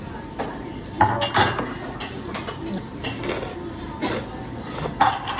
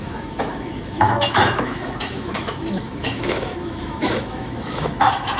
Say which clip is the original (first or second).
first